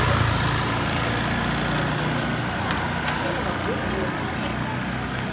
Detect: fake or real real